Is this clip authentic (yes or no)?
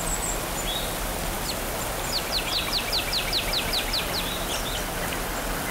yes